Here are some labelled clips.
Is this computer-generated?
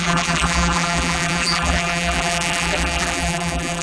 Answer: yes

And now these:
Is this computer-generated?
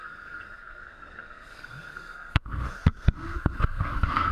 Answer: yes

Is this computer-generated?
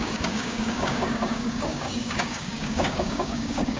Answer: yes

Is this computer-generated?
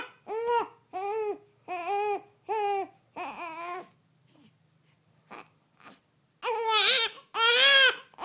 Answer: no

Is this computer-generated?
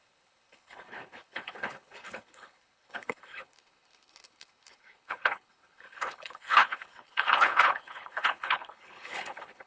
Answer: yes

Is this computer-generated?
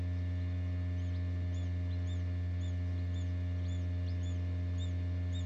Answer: no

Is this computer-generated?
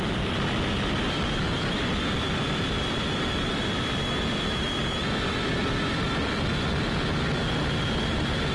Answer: yes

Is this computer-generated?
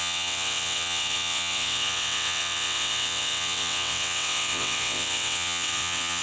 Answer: yes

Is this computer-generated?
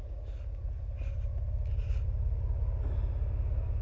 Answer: no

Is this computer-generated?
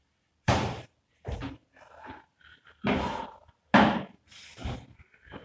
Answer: no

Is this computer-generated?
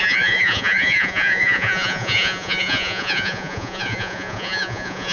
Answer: yes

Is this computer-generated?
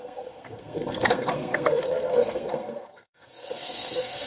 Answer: yes